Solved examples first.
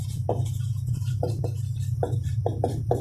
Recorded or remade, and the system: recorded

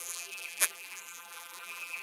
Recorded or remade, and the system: remade, vocoder, BigVGAN v2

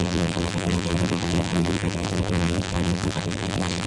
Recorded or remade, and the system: remade, vocoder, BigVGAN v2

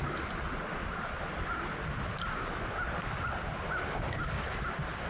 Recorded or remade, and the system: remade, vocoder, BigVGAN v2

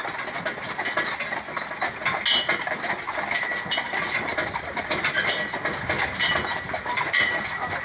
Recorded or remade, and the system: recorded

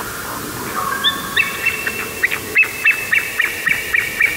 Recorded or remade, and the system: recorded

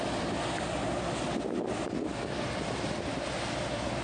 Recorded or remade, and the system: recorded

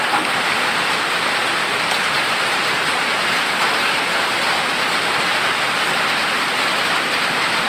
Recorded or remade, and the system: recorded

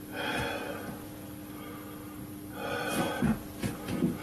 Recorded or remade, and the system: recorded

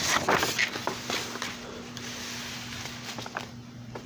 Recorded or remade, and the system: recorded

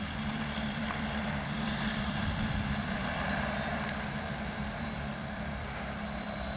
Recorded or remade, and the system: remade, vocoder, BigVGAN v2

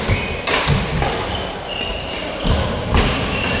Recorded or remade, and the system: recorded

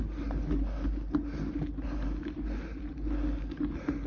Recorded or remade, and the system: recorded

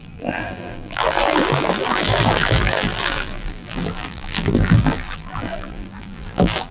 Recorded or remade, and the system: remade, vocoder, BigVGAN v2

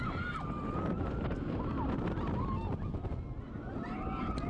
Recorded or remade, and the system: recorded